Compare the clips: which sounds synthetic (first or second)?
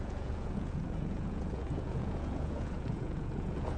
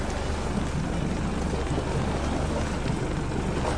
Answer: first